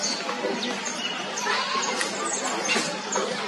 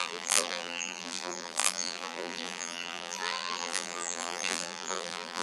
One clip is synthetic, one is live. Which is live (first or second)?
first